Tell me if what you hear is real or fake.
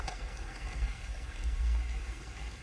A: fake